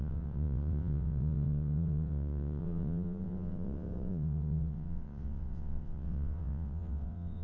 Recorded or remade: remade